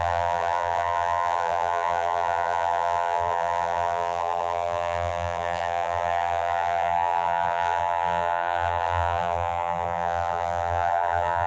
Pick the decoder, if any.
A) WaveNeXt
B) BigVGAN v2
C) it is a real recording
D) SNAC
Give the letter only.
B